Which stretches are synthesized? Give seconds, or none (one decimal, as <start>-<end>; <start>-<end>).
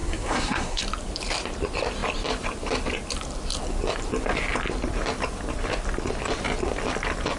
0.0-0.8